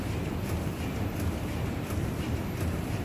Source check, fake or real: real